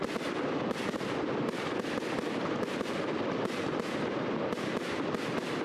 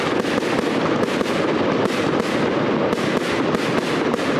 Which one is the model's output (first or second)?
first